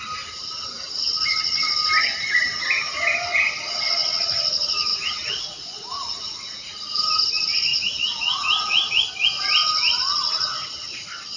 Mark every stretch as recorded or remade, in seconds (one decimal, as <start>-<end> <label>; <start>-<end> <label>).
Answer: 0.0-4.9 recorded; 4.9-7.1 remade; 7.1-7.7 recorded; 7.7-8.9 remade; 8.9-11.4 recorded